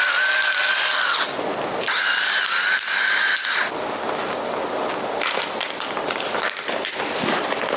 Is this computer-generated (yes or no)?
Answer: no